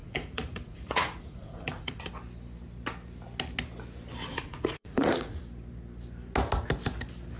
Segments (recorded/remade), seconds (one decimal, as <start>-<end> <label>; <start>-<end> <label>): 0.0-2.1 remade; 2.1-4.3 recorded; 4.3-5.4 remade; 5.4-7.4 recorded